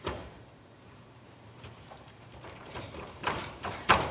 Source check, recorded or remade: remade